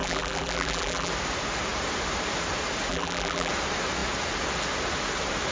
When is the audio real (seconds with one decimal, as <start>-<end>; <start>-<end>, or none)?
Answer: 1.1-2.9; 3.5-5.5